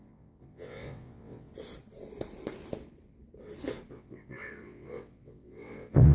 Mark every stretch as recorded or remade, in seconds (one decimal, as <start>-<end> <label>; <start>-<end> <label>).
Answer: 0.0-1.5 remade; 1.5-3.9 recorded; 3.9-6.1 remade

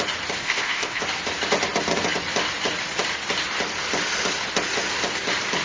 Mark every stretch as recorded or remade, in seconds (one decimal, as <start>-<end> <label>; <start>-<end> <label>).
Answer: 0.0-0.4 recorded; 0.4-1.0 remade; 1.0-5.6 recorded

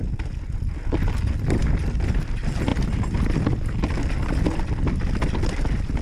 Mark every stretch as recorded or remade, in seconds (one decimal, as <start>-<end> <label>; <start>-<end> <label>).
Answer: 0.0-6.0 recorded